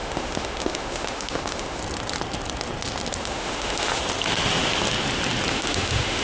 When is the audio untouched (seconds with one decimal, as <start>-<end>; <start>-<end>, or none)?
1.8-3.2; 4.0-5.5